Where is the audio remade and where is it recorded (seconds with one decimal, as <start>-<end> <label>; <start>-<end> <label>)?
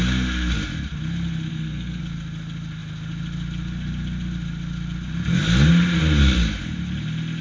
0.0-1.5 recorded; 1.5-2.0 remade; 2.0-7.4 recorded